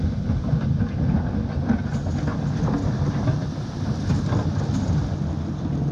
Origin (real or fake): real